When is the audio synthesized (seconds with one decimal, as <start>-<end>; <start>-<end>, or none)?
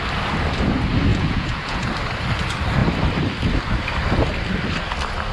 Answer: 1.1-1.9